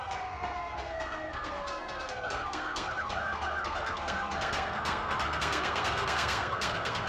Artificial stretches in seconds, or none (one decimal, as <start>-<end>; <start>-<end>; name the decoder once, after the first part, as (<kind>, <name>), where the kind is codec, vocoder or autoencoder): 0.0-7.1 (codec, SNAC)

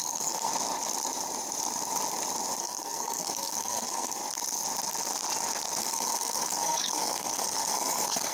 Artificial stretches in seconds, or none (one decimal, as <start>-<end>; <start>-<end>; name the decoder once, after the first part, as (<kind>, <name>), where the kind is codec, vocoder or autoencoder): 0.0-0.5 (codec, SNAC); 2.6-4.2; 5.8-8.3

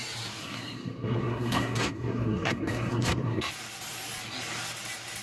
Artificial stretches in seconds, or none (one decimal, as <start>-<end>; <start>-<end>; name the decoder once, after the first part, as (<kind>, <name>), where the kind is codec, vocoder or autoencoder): 0.4-3.5 (codec, SNAC)

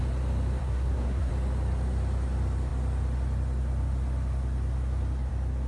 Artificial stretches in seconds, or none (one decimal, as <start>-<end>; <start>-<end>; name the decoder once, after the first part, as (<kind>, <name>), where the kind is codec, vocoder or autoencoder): 0.6-1.3 (codec, SNAC)

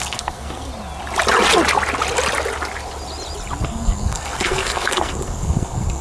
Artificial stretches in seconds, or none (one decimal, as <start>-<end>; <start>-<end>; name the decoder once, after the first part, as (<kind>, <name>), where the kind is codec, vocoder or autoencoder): 0.0-0.7 (codec, SNAC); 3.6-6.0

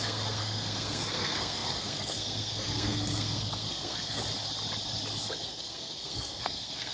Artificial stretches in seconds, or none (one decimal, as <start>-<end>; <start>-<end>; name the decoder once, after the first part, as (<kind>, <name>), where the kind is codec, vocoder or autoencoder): 0.0-4.2 (codec, SNAC); 5.2-6.9

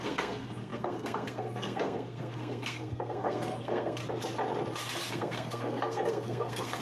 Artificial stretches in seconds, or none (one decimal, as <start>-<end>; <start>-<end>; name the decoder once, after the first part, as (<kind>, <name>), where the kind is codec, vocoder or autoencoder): 0.0-4.0 (codec, SNAC); 5.1-6.8

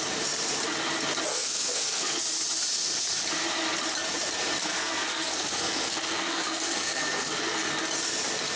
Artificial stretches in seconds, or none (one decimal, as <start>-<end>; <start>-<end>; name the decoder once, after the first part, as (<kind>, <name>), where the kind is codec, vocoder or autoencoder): 1.3-2.2 (codec, SNAC); 4.6-7.7